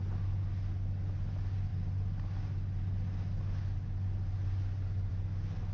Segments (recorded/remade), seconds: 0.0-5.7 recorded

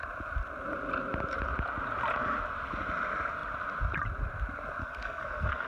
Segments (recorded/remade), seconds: 0.0-4.8 recorded; 4.8-5.7 remade

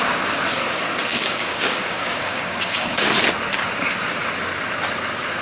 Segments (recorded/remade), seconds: 0.0-1.1 recorded; 1.1-3.1 remade; 3.1-5.4 recorded

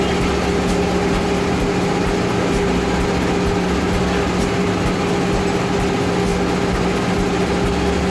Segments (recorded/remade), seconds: 0.0-8.1 recorded

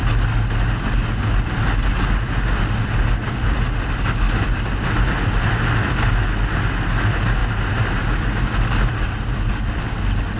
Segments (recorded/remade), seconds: 0.0-10.4 recorded

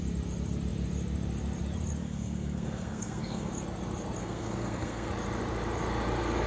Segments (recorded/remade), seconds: 0.0-2.0 recorded; 2.0-3.5 remade; 3.5-4.2 recorded; 4.2-5.1 remade; 5.1-6.5 recorded

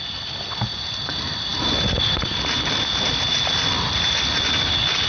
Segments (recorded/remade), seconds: 0.0-5.1 recorded